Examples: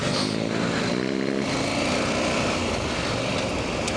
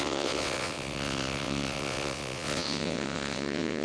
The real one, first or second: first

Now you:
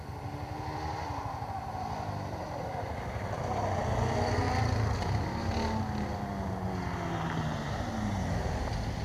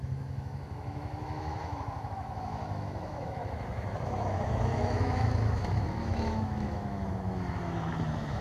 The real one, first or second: first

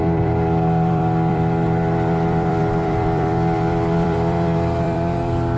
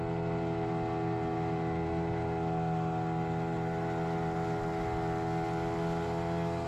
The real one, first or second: second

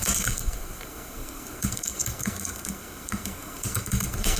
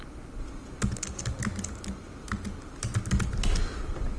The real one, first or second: second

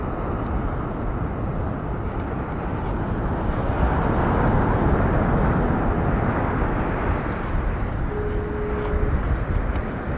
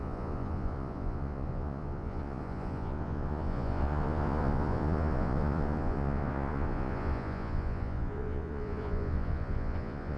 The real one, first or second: first